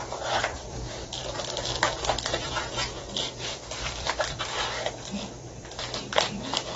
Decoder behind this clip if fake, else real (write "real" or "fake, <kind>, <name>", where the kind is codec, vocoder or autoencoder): fake, vocoder, BigVGAN v2